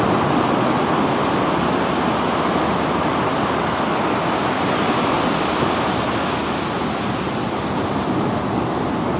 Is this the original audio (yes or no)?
yes